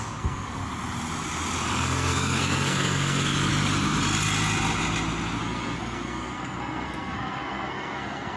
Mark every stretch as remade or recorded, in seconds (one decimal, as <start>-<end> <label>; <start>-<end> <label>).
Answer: 0.0-0.6 remade; 0.6-1.7 recorded; 1.7-3.5 remade; 3.5-5.4 recorded; 5.4-8.4 remade